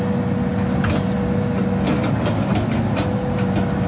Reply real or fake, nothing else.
real